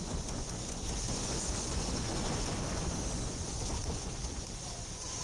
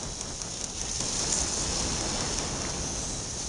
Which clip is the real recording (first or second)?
second